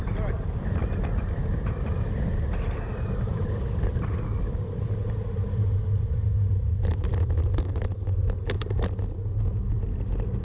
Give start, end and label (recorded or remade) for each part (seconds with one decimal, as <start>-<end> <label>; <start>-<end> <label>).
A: 0.0-10.4 recorded